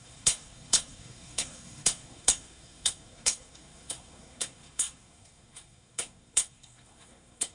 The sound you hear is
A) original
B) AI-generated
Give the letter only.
B